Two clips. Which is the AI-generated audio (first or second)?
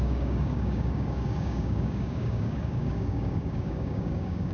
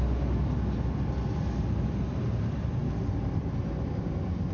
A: first